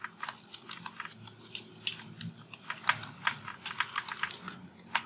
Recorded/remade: recorded